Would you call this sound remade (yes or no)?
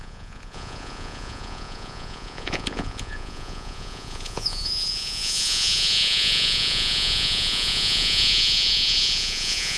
yes